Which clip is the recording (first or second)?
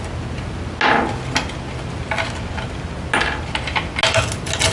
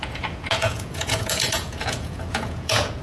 first